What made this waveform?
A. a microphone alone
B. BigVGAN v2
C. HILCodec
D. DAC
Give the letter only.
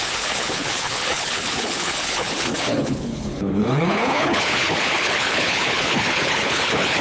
C